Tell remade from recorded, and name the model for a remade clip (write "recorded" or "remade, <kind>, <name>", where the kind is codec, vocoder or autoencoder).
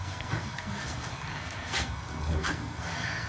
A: remade, codec, SNAC